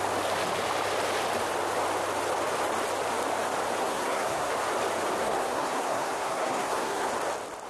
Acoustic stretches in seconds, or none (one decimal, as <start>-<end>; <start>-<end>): 0.0-3.8; 4.5-5.2; 7.1-7.7